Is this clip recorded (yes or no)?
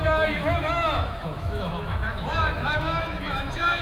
no